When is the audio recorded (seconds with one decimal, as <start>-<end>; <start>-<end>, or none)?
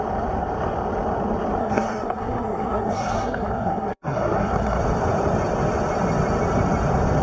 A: 0.0-1.6; 4.8-7.2